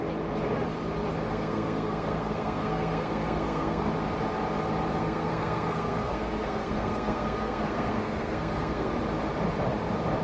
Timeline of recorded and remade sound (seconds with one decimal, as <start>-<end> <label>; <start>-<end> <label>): 0.0-1.3 recorded; 1.3-3.9 remade; 3.9-5.0 recorded; 5.0-8.9 remade; 8.9-10.2 recorded